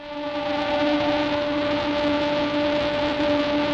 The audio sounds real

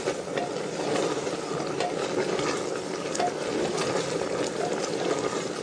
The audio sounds real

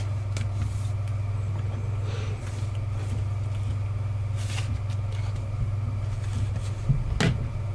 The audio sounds real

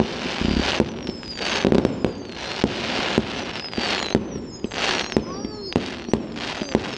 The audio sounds real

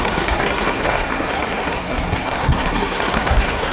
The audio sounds fake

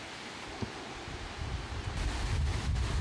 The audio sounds real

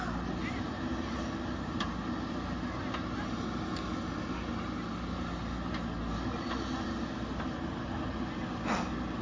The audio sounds real